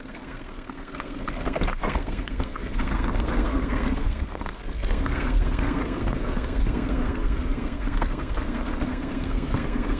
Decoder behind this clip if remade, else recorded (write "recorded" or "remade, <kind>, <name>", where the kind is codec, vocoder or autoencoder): remade, codec, SNAC